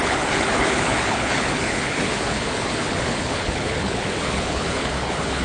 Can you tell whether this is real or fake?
fake